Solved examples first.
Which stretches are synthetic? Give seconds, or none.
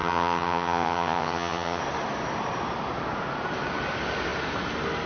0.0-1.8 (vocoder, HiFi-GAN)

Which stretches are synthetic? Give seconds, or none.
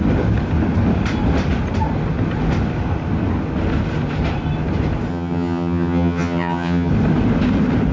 5.1-6.9 (vocoder, HiFi-GAN)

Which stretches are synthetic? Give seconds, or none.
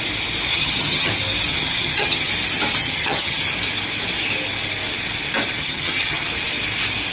0.5-1.1 (vocoder, HiFi-GAN); 1.5-2.3; 2.8-3.5; 5.6-6.3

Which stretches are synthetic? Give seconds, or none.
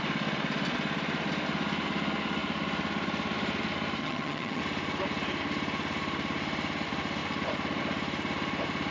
4.0-4.6 (vocoder, HiFi-GAN)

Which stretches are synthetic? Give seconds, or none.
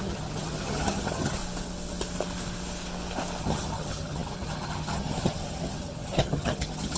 0.0-1.4 (vocoder, HiFi-GAN); 3.4-7.0